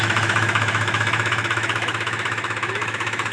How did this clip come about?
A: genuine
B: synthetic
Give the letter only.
B